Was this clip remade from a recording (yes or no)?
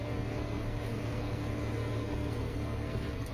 yes